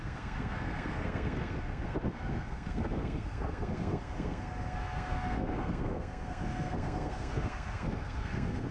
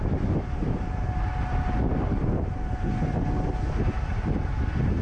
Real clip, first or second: second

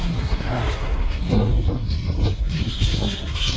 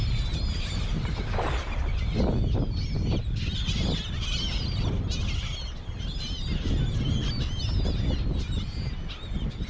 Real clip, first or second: second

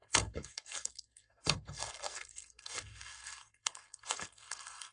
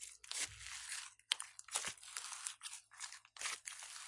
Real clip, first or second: second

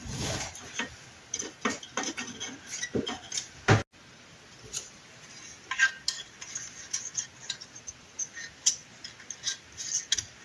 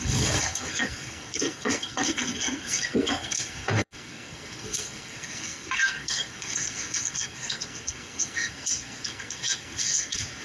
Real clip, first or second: first